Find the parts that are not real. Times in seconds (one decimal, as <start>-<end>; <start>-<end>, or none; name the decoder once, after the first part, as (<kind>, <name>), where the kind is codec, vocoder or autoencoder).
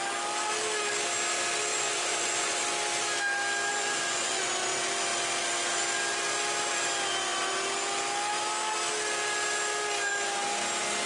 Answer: 1.7-2.6 (vocoder, Vocos); 3.7-4.5